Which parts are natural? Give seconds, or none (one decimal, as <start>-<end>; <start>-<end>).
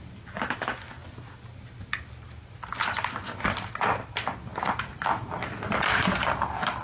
0.0-6.8